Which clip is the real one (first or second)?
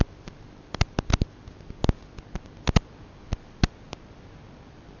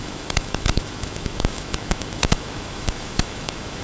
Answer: first